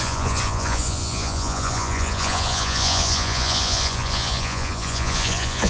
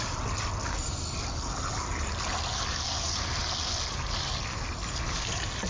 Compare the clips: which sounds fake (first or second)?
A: first